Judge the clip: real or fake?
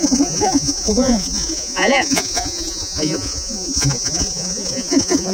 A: fake